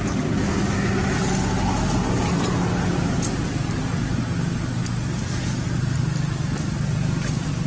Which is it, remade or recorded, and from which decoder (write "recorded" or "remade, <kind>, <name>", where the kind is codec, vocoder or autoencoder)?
recorded